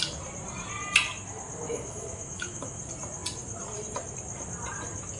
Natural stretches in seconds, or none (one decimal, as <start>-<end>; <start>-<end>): 0.0-1.7; 2.8-5.2

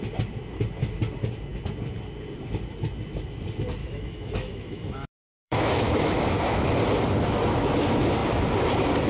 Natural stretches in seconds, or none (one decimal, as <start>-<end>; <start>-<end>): 0.0-3.8; 6.7-9.1